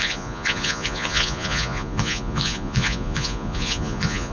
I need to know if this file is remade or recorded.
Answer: remade